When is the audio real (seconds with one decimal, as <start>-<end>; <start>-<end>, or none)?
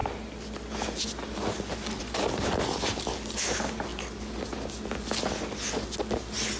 0.0-6.6